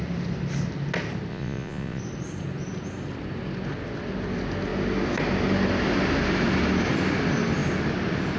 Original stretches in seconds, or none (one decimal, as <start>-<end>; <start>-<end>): 0.0-1.3; 2.0-8.4